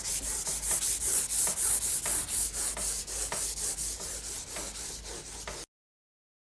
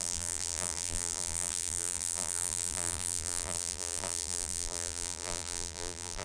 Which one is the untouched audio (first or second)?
first